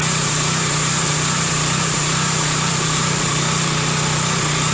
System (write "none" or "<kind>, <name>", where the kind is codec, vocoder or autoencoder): vocoder, BigVGAN v2